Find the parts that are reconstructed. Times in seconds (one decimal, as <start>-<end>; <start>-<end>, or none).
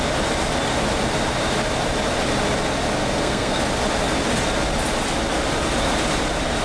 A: 3.0-3.6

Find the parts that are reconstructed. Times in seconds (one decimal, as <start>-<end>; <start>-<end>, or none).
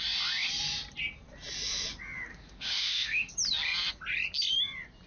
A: 2.3-3.3